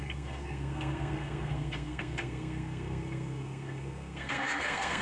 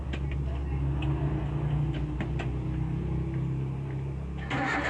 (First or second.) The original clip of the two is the second